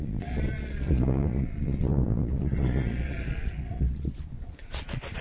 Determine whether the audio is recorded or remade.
remade